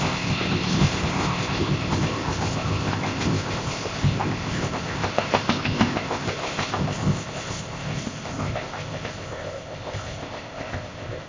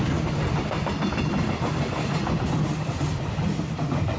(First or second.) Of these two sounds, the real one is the second